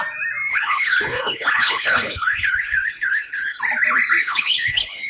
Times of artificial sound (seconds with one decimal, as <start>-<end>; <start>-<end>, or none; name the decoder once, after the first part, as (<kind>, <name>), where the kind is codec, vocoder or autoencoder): 0.5-3.6 (codec, HILCodec); 4.2-5.1